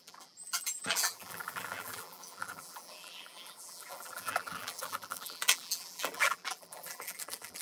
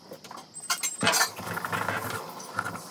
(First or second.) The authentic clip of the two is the second